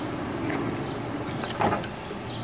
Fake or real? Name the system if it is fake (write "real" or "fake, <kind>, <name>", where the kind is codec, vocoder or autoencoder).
real